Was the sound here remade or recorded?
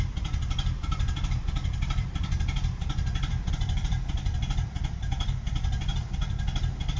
remade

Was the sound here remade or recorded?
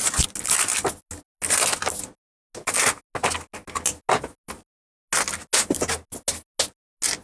recorded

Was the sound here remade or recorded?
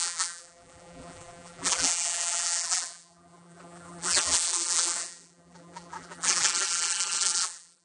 remade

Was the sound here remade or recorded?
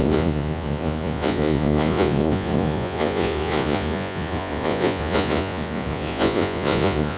remade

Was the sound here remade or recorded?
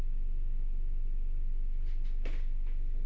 recorded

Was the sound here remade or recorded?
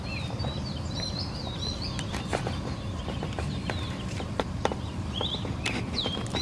recorded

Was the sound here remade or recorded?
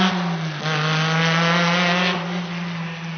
recorded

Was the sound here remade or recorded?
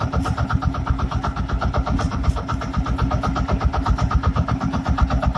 recorded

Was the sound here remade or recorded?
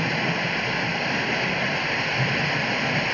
recorded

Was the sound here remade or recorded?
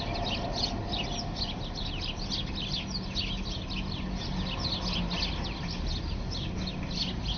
recorded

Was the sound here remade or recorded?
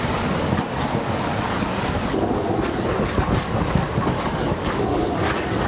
remade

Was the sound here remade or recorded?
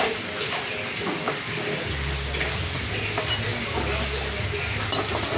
recorded